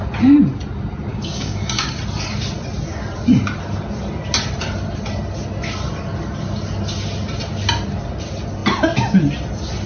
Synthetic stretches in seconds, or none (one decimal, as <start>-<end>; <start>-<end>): 1.1-1.9